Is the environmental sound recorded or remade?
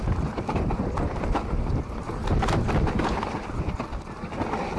recorded